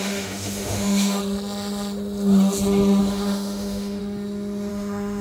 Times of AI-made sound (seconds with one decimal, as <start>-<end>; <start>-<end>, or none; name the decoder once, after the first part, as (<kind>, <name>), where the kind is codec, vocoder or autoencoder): 0.0-1.2 (autoencoder, DAC-VAE); 3.0-4.0; 4.7-5.2